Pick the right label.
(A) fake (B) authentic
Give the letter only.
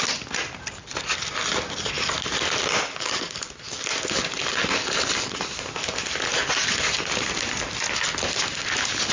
B